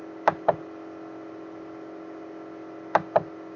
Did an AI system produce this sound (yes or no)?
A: no